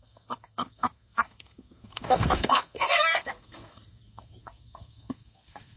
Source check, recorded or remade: remade